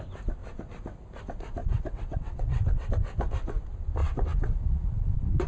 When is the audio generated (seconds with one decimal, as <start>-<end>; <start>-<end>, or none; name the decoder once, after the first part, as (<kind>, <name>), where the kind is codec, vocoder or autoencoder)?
1.6-2.9 (vocoder, WaveNeXt); 4.0-5.5